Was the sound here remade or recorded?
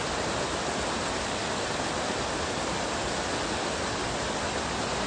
recorded